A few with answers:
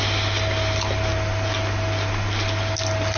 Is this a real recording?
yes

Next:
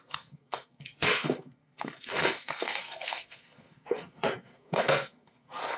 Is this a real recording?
no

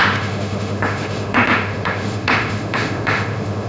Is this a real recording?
no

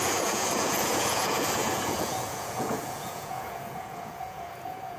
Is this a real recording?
no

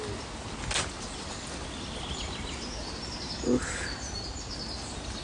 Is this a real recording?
yes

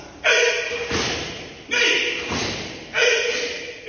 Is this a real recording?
no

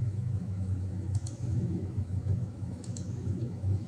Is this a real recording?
no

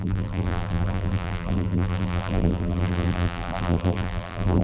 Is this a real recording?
no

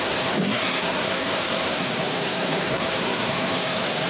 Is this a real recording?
no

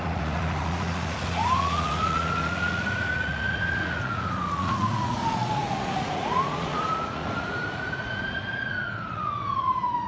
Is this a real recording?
no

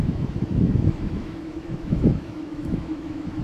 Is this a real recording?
no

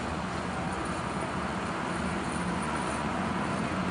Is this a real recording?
no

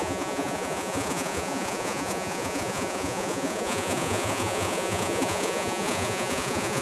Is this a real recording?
no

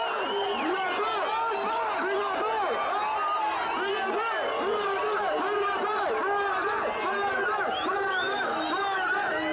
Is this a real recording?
yes